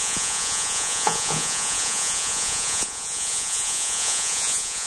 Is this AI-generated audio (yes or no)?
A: yes